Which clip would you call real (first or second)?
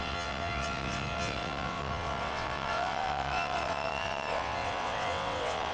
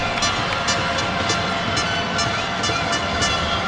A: second